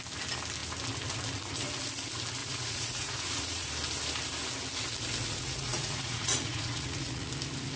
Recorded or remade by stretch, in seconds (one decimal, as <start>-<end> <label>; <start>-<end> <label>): 0.0-2.4 recorded; 2.4-3.7 remade; 3.7-5.2 recorded; 5.2-7.3 remade; 7.3-7.8 recorded